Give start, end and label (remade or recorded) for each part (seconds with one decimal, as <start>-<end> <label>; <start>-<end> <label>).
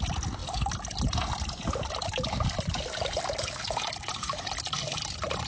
0.0-5.5 recorded